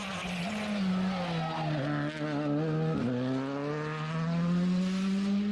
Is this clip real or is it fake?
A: real